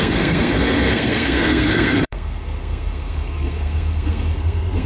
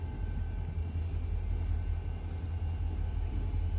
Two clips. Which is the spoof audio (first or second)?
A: first